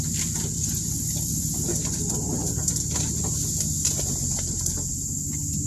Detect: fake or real real